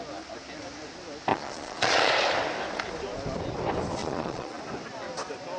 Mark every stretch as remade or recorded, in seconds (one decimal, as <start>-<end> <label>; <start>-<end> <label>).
0.0-1.3 recorded; 1.3-2.1 remade; 2.1-4.0 recorded; 4.0-4.6 remade; 4.6-5.6 recorded